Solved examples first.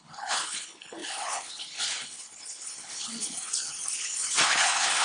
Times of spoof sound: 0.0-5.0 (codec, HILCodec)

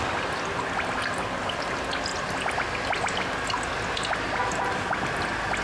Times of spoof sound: none

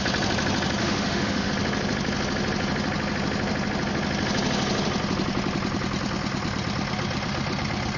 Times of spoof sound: 0.8-1.5 (autoencoder, DAC-VAE)

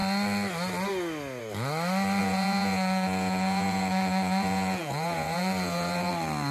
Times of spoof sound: 2.2-6.1 (vocoder, Vocos)

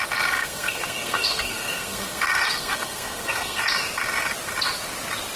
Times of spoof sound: 0.4-3.6 (codec, SNAC)

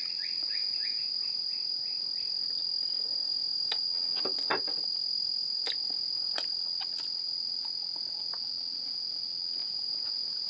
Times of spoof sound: 0.4-1.1 (vocoder, Vocos); 9.6-10.5

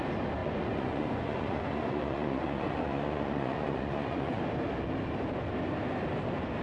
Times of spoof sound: 0.4-4.4 (vocoder, Vocos)

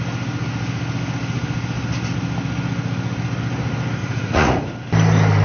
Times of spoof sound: 4.0-4.7 (vocoder, Vocos)